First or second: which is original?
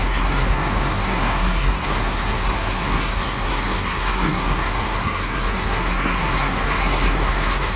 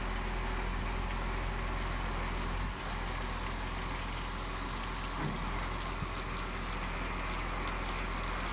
second